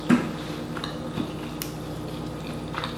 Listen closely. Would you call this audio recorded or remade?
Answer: recorded